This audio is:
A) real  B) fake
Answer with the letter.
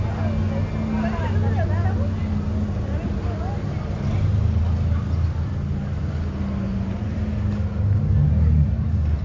A